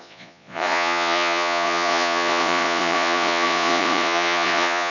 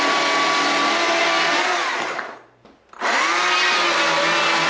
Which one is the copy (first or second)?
first